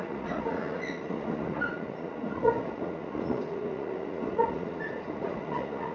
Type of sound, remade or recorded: remade